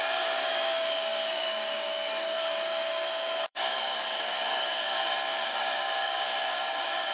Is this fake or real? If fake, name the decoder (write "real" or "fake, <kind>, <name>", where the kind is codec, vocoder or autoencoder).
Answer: fake, codec, DAC